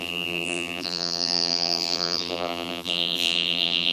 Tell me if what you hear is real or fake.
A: fake